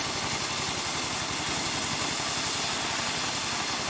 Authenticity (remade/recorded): recorded